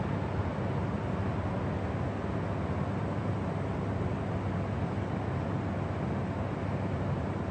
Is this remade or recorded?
recorded